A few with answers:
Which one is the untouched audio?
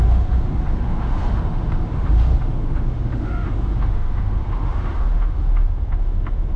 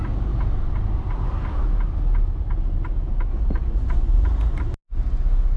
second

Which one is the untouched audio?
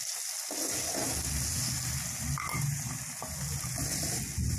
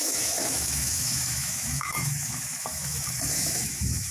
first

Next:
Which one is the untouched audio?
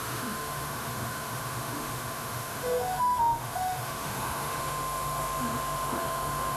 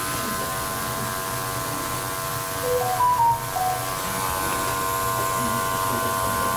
second